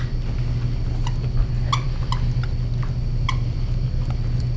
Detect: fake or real real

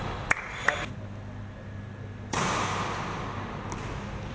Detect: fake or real real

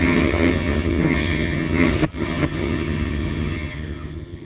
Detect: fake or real fake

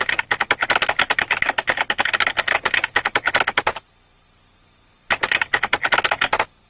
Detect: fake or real real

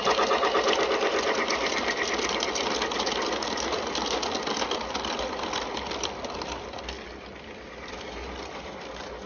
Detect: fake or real real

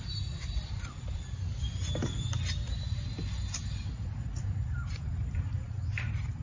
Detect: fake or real real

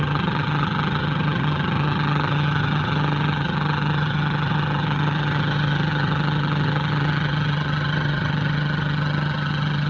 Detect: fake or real fake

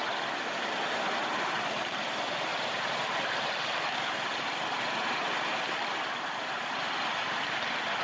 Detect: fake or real real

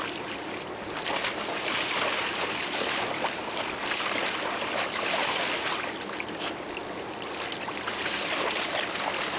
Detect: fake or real real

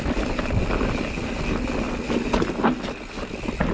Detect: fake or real real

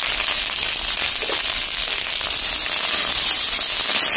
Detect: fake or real real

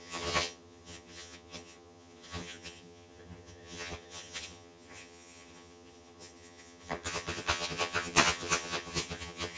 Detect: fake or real fake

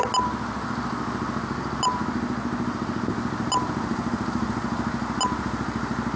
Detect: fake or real real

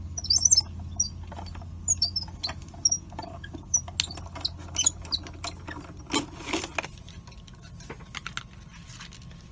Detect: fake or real real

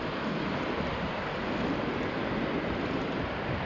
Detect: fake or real real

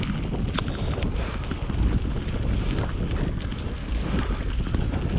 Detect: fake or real real